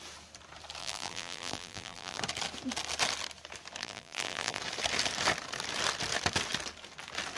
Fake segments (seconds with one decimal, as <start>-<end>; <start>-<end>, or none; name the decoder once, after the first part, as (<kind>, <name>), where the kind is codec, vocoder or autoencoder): 0.8-2.2 (vocoder, BigVGAN v2); 3.8-4.6